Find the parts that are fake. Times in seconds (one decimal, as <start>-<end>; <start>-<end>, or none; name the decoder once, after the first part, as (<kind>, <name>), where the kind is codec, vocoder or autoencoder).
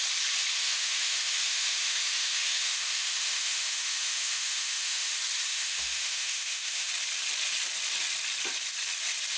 0.6-5.1 (autoencoder, DAC-VAE); 5.5-6.9